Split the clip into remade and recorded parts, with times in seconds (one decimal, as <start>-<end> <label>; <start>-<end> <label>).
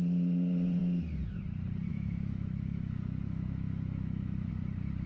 0.0-1.9 recorded; 1.9-4.5 remade; 4.5-5.1 recorded